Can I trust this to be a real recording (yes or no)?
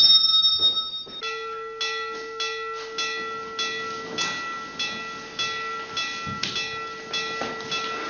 yes